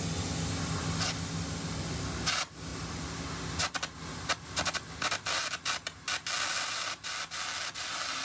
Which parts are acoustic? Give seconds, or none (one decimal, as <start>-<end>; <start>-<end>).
0.0-8.2